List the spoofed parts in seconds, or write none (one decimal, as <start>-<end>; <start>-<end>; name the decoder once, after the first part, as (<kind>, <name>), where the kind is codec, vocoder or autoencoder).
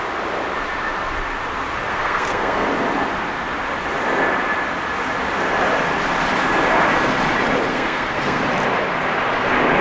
1.9-2.7 (codec, SNAC); 7.7-8.4